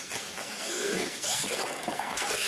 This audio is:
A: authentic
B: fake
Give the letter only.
B